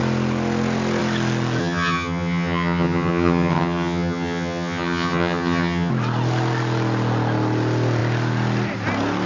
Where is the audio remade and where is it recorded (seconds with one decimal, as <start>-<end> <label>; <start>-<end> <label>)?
0.0-1.6 recorded; 1.6-5.9 remade; 5.9-9.3 recorded